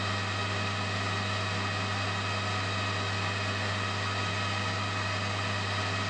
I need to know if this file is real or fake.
real